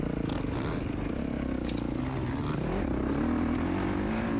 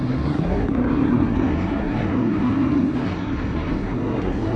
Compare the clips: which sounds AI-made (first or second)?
second